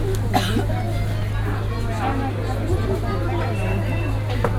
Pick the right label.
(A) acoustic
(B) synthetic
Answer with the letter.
A